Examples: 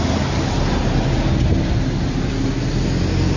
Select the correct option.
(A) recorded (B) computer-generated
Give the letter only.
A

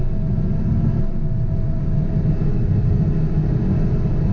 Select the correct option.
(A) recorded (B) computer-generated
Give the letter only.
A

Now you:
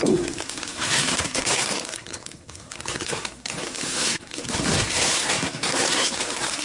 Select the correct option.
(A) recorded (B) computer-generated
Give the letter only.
B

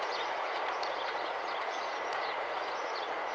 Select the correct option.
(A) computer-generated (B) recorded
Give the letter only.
A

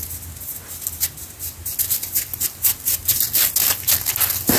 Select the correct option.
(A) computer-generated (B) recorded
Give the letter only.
B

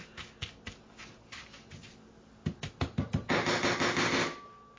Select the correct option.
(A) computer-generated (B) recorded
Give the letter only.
B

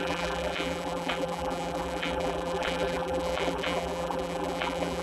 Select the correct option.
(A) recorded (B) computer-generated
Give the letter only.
B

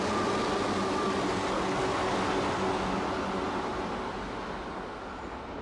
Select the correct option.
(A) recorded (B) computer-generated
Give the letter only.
A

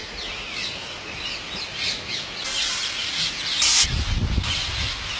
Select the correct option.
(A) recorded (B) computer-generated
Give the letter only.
A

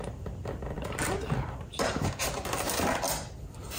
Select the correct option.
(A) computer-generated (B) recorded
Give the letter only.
A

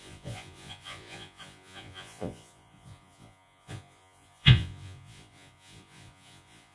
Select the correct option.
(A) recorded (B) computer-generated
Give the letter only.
B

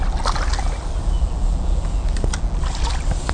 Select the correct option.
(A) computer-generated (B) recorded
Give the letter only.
B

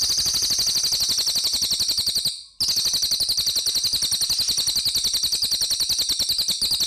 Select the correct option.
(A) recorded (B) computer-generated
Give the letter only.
A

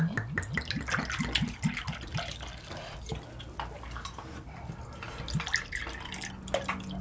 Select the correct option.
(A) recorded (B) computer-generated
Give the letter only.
A